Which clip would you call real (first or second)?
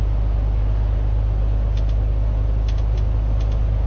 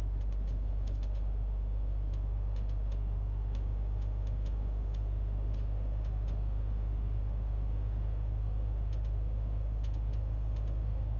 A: first